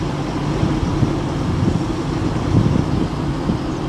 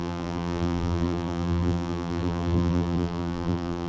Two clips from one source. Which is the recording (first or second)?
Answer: first